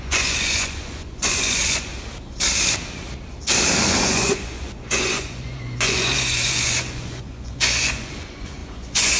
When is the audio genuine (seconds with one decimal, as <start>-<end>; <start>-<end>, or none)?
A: 1.9-3.9